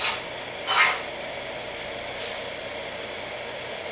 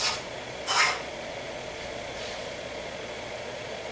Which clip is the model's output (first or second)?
second